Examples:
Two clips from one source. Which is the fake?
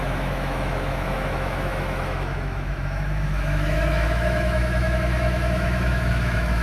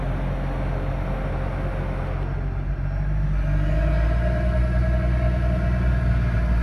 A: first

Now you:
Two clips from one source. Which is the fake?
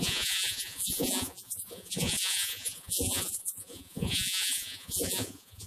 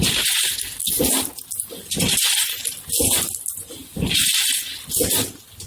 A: first